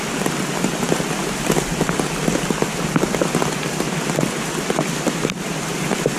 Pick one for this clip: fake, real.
real